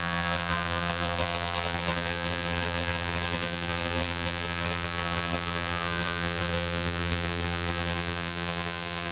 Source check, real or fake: fake